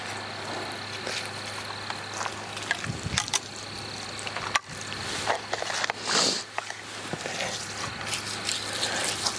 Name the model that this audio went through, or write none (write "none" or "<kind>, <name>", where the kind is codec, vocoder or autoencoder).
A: none